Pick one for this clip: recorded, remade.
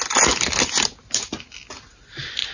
recorded